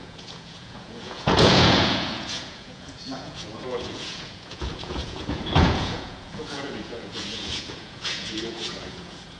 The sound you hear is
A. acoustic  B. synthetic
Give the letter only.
B